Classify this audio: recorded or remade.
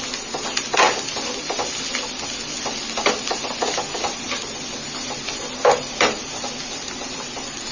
recorded